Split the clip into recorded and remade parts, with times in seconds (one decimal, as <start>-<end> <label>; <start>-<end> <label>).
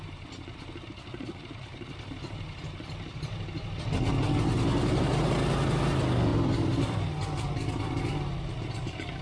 0.0-6.3 recorded; 6.3-8.0 remade; 8.0-9.2 recorded